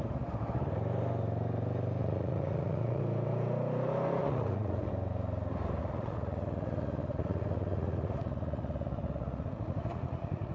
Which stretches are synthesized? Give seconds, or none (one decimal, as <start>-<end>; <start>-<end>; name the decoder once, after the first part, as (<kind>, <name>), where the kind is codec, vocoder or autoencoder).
2.0-3.0 (vocoder, Vocos); 4.2-4.9; 5.8-10.5